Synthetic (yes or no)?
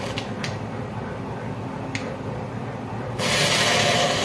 no